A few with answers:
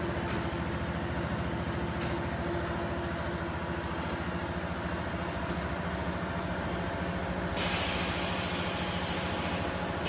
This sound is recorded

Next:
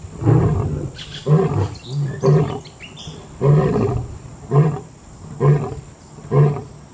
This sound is recorded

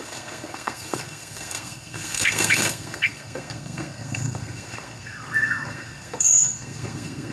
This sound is remade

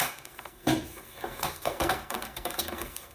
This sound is remade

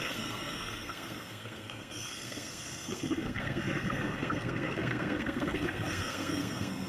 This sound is remade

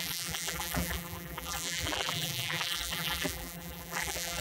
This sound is remade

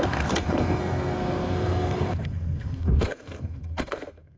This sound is remade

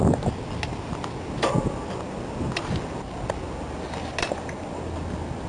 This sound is recorded